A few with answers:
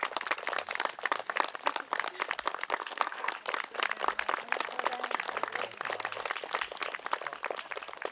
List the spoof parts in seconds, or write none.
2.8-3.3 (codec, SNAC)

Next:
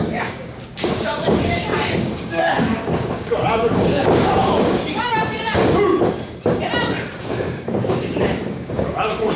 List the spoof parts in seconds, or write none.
0.0-5.6 (codec, DAC); 7.2-9.4

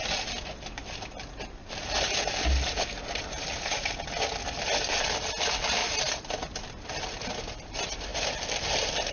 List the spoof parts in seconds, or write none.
1.6-4.0 (vocoder, BigVGAN v2); 5.8-6.3; 8.1-9.1

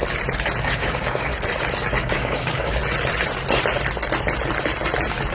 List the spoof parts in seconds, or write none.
0.6-1.3 (codec, DAC); 2.0-2.8

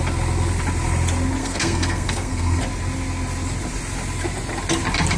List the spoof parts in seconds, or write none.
1.4-2.6 (codec, SNAC)

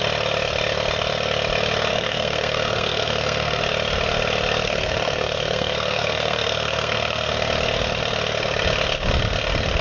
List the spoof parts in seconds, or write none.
1.9-3.6 (codec, SNAC); 4.6-7.3